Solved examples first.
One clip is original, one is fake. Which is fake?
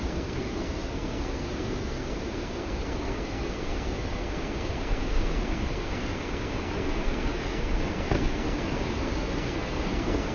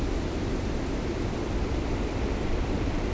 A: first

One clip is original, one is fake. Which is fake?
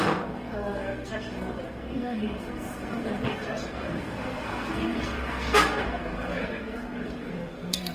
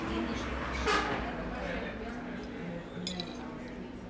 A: first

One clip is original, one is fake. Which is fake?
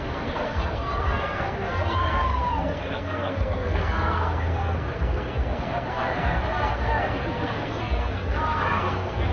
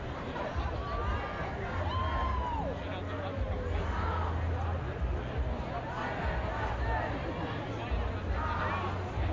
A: first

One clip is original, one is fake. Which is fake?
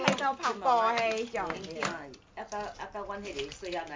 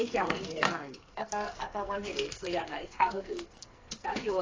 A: second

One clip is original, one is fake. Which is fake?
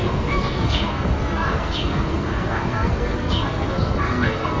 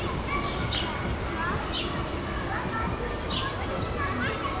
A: first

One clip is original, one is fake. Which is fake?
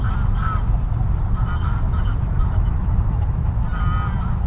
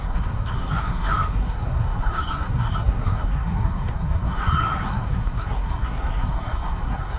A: second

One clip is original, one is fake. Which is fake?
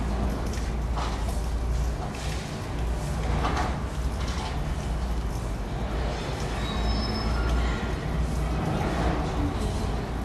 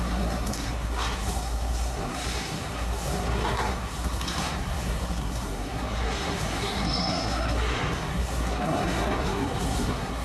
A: second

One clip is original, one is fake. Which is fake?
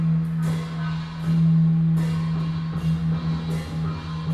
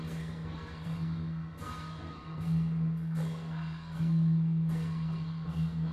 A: second